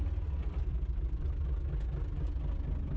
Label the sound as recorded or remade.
recorded